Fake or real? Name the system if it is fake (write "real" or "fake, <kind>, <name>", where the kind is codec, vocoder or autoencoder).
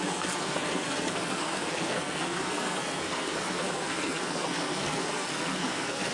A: fake, codec, SNAC